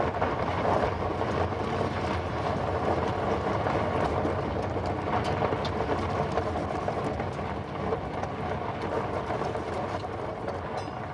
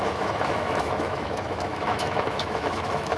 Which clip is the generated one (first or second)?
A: second